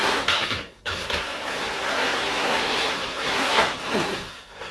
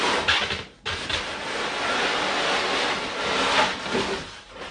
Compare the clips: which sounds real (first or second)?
second